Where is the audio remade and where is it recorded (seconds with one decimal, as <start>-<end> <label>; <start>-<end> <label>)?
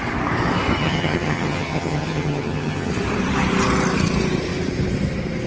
0.0-0.8 recorded; 0.8-2.9 remade; 2.9-5.5 recorded